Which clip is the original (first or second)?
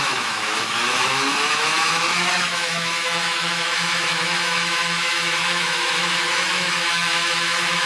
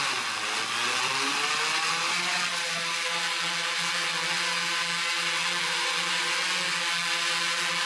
second